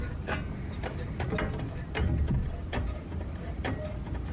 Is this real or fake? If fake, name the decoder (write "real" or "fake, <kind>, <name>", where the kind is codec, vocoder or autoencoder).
real